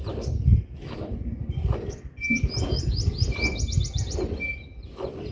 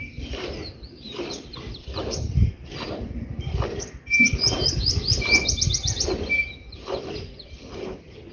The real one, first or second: first